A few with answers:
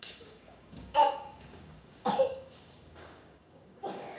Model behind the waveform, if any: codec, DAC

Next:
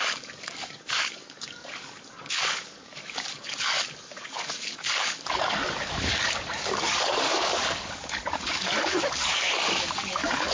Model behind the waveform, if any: codec, DAC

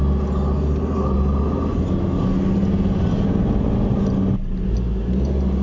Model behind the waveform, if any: none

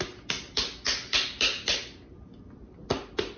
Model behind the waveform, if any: none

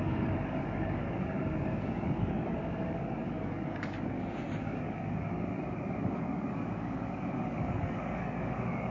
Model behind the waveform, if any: codec, DAC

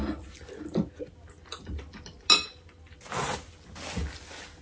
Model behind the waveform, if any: none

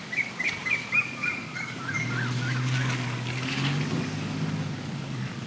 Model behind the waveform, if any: codec, DAC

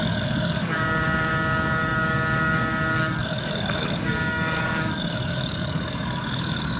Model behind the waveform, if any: codec, DAC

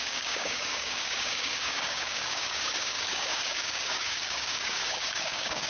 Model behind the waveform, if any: codec, DAC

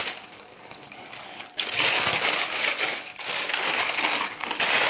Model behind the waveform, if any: codec, DAC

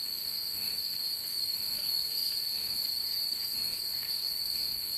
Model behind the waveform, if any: codec, DAC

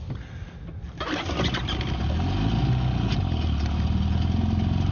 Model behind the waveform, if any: none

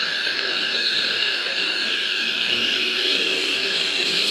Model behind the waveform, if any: codec, DAC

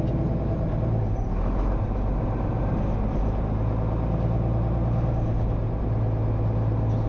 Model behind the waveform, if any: none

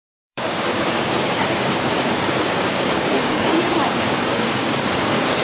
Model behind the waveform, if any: codec, DAC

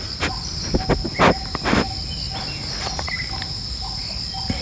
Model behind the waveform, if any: none